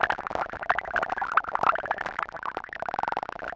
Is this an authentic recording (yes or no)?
yes